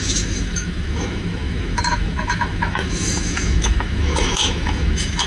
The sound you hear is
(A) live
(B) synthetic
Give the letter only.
B